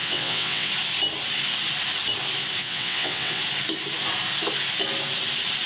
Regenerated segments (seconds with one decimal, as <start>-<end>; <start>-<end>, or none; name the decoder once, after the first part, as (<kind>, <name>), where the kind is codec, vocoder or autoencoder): 0.0-0.7 (vocoder, WaveNeXt); 2.6-3.4